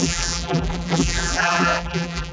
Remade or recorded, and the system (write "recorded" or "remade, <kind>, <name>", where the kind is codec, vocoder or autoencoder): remade, vocoder, BigVGAN v2